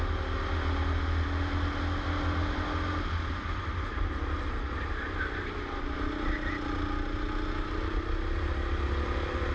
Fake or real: real